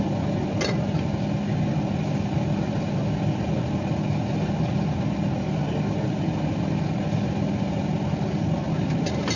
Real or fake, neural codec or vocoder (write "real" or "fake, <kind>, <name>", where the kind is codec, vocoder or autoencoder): real